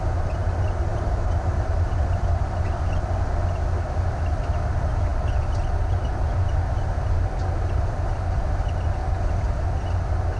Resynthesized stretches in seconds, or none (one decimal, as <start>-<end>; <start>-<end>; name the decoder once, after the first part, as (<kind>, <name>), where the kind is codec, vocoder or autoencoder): 0.9-1.8 (vocoder, BigVGAN v2)